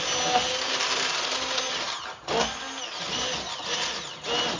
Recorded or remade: recorded